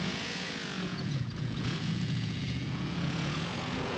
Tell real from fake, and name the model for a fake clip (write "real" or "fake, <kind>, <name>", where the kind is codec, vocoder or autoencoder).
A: fake, vocoder, Vocos